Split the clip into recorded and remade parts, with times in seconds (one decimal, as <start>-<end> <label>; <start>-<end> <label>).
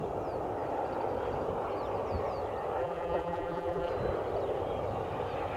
0.0-2.8 recorded; 2.8-3.9 remade; 3.9-5.6 recorded